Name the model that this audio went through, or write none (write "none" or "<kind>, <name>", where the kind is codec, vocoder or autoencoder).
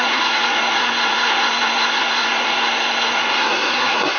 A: codec, SNAC